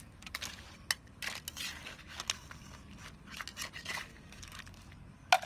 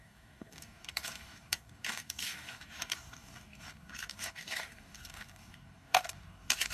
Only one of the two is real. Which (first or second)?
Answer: first